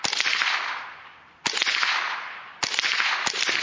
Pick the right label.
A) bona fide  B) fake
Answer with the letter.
A